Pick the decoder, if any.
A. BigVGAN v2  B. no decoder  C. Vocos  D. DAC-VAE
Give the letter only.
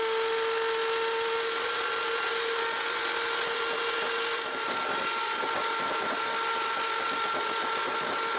B